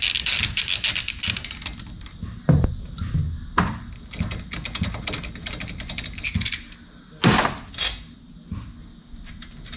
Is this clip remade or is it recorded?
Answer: recorded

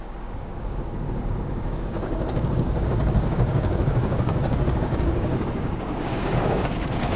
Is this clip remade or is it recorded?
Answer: remade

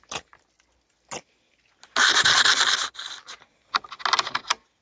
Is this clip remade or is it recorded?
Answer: recorded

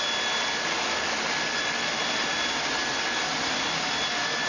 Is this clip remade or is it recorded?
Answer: recorded